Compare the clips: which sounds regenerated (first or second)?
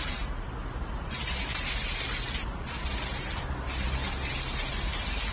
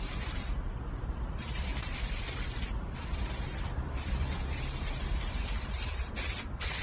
second